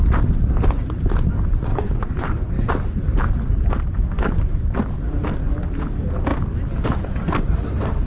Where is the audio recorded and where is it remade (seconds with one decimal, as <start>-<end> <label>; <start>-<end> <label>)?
0.0-1.7 recorded; 1.7-2.5 remade; 2.5-8.1 recorded